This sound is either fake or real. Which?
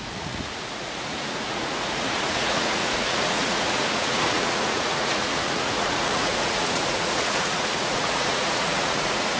fake